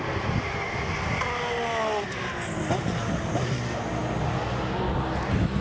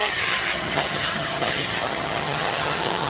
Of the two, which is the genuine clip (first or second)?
first